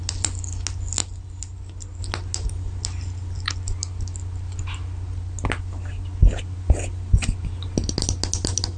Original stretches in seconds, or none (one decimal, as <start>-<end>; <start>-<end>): 0.0-8.8